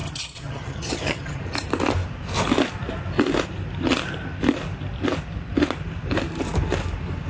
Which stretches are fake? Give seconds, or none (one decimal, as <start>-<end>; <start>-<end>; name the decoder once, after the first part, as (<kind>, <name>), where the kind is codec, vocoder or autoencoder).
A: 0.0-1.4 (vocoder, HiFi-GAN)